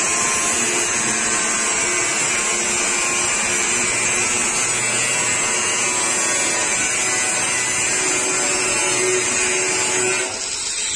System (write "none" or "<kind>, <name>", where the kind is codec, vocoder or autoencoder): none